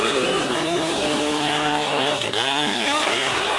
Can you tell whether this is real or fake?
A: fake